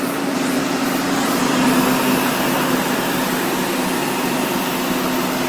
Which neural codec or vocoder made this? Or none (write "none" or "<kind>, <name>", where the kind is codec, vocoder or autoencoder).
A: none